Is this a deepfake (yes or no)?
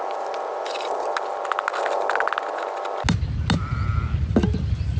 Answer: no